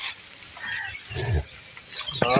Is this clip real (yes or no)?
yes